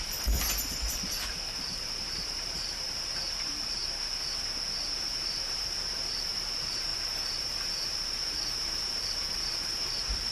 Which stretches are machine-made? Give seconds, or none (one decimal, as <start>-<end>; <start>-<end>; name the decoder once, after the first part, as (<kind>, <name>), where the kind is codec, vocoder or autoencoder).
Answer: 0.0-3.8 (vocoder, BigVGAN v2); 5.0-10.3